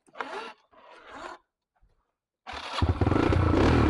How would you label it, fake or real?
real